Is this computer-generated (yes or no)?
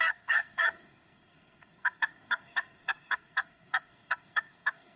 yes